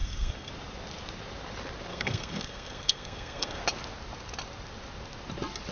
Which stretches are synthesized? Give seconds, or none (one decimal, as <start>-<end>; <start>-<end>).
0.0-0.5; 1.9-3.6